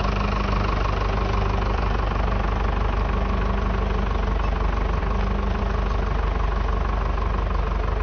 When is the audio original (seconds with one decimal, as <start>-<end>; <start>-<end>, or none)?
0.0-8.0